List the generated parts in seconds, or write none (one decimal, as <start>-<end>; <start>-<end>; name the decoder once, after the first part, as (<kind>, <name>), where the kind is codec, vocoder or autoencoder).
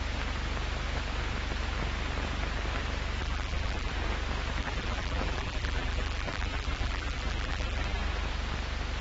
3.2-3.9 (vocoder, BigVGAN v2); 4.6-8.0